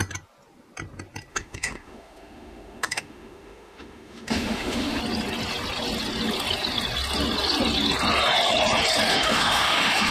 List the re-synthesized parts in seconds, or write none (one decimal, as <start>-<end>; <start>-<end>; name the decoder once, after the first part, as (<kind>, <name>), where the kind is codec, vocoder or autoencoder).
1.3-5.0 (autoencoder, DAC-VAE); 9.1-10.1